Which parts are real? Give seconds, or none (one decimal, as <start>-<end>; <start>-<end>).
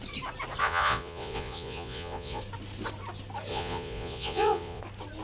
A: 0.0-0.6; 2.4-3.5; 4.8-5.2